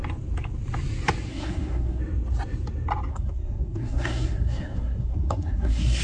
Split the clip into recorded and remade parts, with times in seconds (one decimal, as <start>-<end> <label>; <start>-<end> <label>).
0.0-1.3 recorded; 1.3-2.0 remade; 2.0-3.1 recorded; 3.1-6.0 remade